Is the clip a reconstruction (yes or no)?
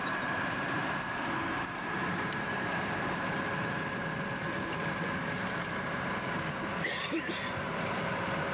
yes